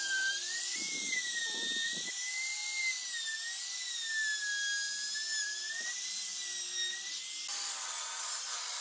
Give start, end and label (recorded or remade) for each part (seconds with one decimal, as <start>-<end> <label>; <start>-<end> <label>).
0.0-2.6 remade; 2.6-5.4 recorded; 5.4-6.3 remade; 6.3-8.2 recorded; 8.2-8.8 remade